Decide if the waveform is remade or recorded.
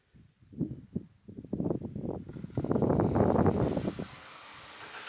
recorded